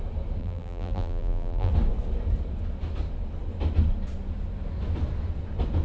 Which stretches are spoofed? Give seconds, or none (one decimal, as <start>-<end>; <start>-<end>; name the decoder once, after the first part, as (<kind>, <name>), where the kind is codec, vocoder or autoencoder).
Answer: 0.4-1.7 (vocoder, BigVGAN v2)